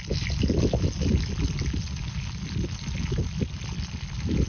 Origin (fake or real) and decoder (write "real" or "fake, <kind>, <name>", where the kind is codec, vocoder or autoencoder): real